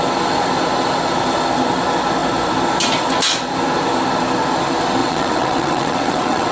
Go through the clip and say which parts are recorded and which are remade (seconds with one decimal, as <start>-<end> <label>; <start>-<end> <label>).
0.0-5.0 recorded; 5.0-6.5 remade